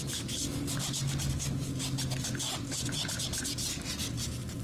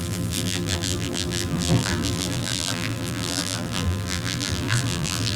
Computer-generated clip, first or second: second